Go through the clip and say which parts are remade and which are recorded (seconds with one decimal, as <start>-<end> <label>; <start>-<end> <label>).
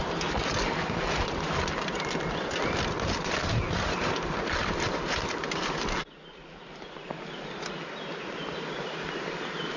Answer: 0.0-9.8 recorded